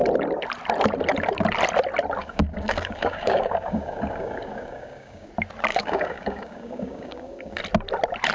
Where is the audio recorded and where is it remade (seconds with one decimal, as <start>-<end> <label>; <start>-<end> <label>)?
0.0-2.2 recorded; 2.2-5.3 remade; 5.3-5.7 recorded; 5.7-7.6 remade; 7.6-8.3 recorded